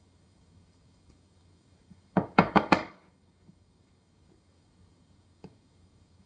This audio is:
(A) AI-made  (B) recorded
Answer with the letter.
A